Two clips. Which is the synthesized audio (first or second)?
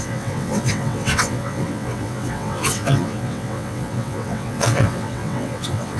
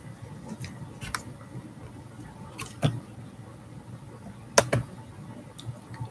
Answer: first